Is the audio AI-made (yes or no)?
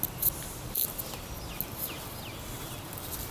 no